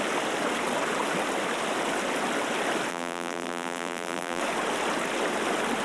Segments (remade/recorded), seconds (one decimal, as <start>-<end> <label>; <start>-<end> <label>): 0.0-2.9 recorded; 2.9-4.4 remade; 4.4-5.8 recorded